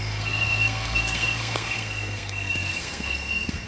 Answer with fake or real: fake